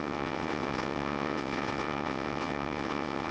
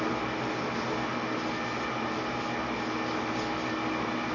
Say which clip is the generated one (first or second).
first